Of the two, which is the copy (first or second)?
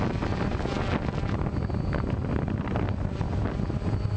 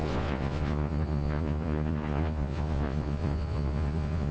second